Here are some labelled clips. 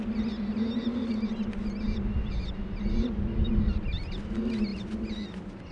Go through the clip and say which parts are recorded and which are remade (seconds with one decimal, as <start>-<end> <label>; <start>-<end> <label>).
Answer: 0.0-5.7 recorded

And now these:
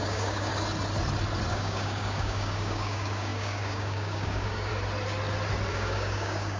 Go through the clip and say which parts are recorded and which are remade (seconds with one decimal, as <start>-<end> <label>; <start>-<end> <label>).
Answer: 0.0-0.5 remade; 0.5-1.5 recorded; 1.5-4.7 remade; 4.7-5.7 recorded; 5.7-6.6 remade

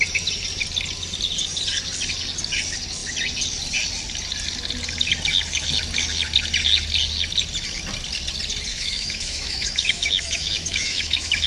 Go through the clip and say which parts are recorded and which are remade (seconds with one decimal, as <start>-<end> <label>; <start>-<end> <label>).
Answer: 0.0-8.7 recorded; 8.7-11.5 remade

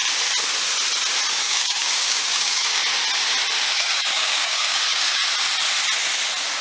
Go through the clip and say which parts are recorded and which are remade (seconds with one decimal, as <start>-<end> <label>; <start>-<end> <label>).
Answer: 0.0-1.3 recorded; 1.3-2.8 remade; 2.8-3.7 recorded; 3.7-5.2 remade; 5.2-6.6 recorded

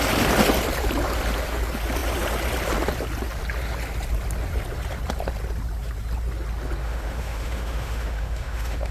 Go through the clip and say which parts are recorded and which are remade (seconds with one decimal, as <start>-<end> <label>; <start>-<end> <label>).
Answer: 0.0-6.8 recorded; 6.8-8.9 remade

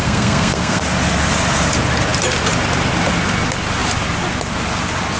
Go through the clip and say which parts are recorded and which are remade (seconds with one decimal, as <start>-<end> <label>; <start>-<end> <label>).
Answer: 0.0-0.8 remade; 0.8-5.2 recorded